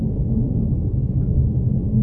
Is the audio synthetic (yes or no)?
yes